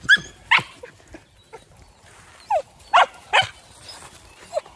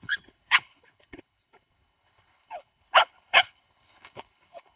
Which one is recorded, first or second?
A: first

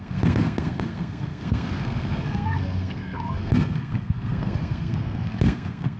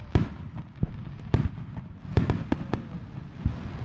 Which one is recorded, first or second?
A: second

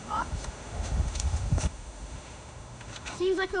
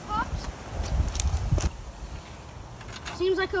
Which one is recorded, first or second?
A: second